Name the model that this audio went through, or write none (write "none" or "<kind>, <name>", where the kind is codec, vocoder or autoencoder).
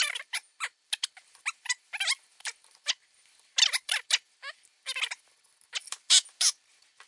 none